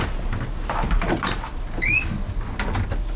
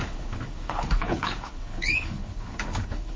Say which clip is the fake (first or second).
second